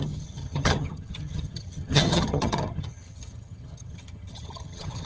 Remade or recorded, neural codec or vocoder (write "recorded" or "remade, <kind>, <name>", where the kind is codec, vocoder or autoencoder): remade, vocoder, HiFi-GAN